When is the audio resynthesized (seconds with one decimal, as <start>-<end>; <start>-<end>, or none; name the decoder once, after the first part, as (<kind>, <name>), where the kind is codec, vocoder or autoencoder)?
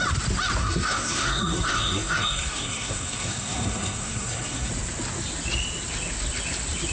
0.6-4.7 (codec, SNAC)